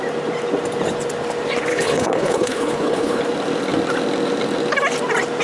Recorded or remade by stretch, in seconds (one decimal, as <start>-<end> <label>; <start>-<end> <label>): 0.0-1.7 recorded; 1.7-3.2 remade; 3.2-5.4 recorded